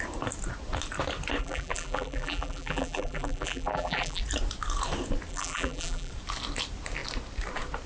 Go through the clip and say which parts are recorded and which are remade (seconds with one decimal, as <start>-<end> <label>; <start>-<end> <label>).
0.0-1.4 recorded; 1.4-4.2 remade; 4.2-5.3 recorded; 5.3-6.1 remade; 6.1-7.9 recorded